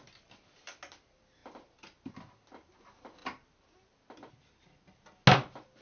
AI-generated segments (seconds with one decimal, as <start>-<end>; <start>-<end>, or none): none